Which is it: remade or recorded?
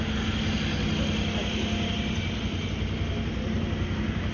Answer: recorded